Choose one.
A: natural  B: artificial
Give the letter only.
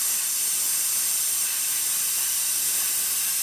B